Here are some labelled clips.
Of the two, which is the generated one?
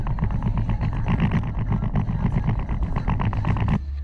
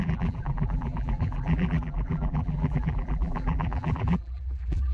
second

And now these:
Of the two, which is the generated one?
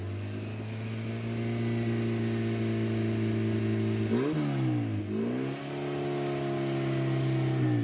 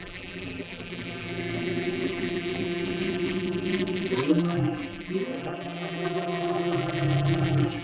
second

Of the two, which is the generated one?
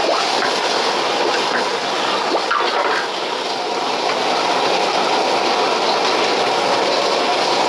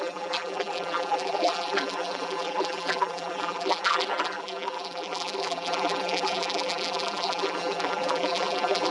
second